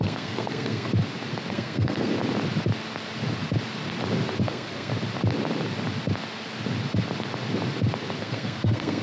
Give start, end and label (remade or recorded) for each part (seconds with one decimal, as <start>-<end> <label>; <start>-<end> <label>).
0.0-0.9 remade; 0.9-1.5 recorded; 1.5-2.1 remade; 2.1-4.4 recorded; 4.4-4.9 remade; 4.9-8.2 recorded; 8.2-9.0 remade